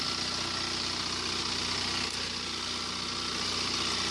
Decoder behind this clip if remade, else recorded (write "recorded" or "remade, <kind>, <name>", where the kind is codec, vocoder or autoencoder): recorded